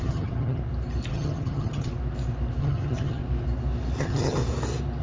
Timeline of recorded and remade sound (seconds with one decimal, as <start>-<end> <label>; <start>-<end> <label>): 0.0-0.6 remade; 0.6-1.1 recorded; 1.1-1.9 remade; 1.9-2.6 recorded; 2.6-3.2 remade; 3.2-4.0 recorded; 4.0-4.4 remade; 4.4-5.0 recorded